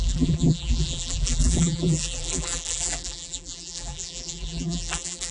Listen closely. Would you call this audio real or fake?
fake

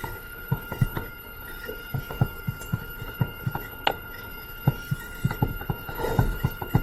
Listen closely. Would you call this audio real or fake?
fake